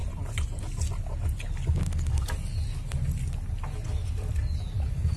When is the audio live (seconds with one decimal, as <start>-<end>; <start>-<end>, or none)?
0.6-5.2